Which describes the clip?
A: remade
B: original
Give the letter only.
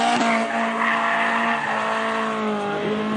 B